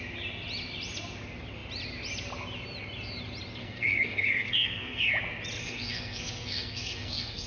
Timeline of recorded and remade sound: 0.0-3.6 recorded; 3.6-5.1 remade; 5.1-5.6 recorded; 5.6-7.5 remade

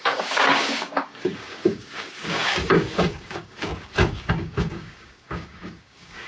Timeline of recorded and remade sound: 0.0-6.3 remade

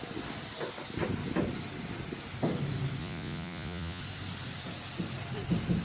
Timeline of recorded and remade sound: 0.0-3.0 recorded; 3.0-4.0 remade; 4.0-5.8 recorded

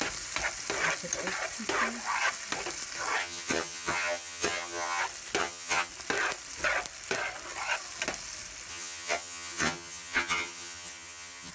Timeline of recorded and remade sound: 0.0-3.2 recorded; 3.2-5.0 remade; 5.0-5.4 recorded; 5.4-5.9 remade; 5.9-8.7 recorded; 8.7-11.5 remade

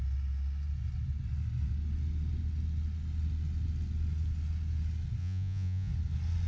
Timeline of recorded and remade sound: 0.0-5.2 recorded; 5.2-5.9 remade; 5.9-6.5 recorded

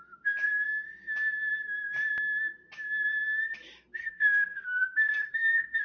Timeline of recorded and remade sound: 0.0-4.0 recorded; 4.0-5.8 remade

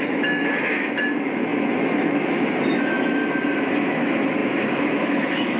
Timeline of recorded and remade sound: 0.0-3.2 remade; 3.2-3.9 recorded; 3.9-5.6 remade

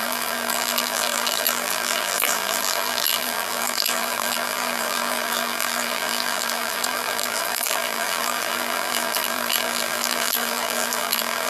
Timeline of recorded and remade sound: 0.0-11.5 remade